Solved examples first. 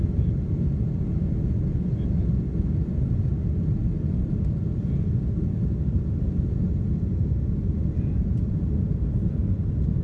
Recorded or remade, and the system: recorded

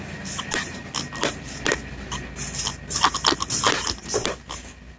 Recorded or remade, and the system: recorded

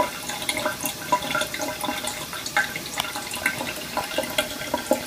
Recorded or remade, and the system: recorded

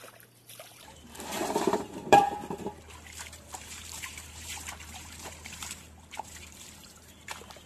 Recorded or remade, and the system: remade, vocoder, BigVGAN v2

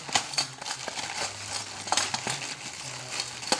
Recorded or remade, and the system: recorded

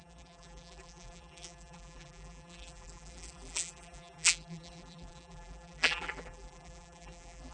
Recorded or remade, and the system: remade, vocoder, BigVGAN v2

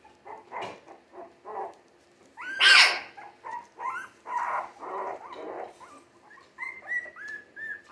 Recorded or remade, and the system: recorded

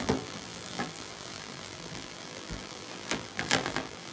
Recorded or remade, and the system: remade, vocoder, BigVGAN v2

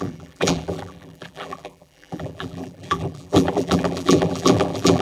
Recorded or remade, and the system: remade, vocoder, BigVGAN v2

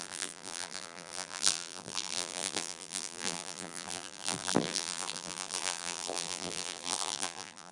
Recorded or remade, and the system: remade, vocoder, BigVGAN v2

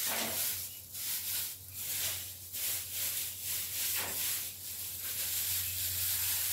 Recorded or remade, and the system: recorded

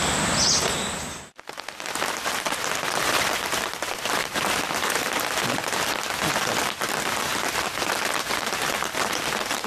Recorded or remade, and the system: recorded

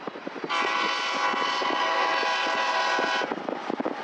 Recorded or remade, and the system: recorded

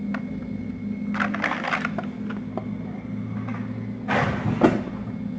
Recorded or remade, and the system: recorded